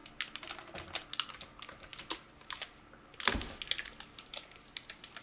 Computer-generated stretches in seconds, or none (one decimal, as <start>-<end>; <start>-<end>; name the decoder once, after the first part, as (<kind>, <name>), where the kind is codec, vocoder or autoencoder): none